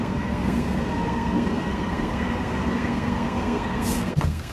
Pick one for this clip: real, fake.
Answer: fake